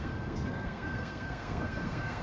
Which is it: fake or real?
fake